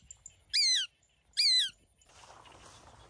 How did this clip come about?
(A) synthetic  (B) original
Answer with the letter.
B